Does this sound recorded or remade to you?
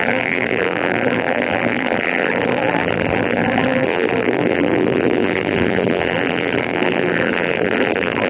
remade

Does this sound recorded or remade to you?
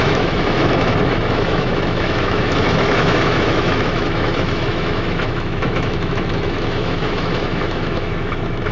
remade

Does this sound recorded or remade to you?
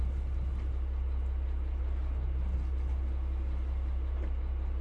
recorded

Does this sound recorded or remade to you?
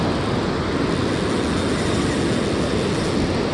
recorded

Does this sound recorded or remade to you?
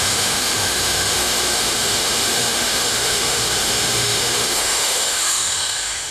remade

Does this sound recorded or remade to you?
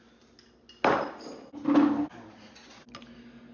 recorded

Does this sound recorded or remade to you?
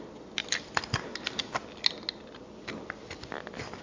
recorded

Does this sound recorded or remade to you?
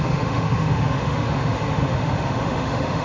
remade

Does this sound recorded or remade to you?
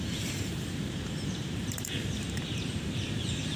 remade